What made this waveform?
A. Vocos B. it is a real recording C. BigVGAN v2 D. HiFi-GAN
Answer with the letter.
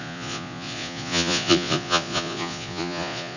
A